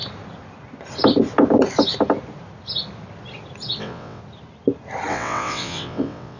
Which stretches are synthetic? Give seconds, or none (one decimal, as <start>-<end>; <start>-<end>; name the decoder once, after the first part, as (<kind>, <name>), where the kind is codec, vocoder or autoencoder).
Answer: 3.8-4.2 (vocoder, WaveNeXt); 5.1-6.4